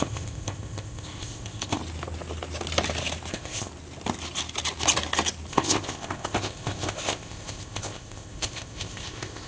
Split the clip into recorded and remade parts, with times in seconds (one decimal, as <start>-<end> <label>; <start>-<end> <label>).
0.0-1.8 remade; 1.8-3.3 recorded; 3.3-3.7 remade; 3.7-5.5 recorded; 5.5-9.5 remade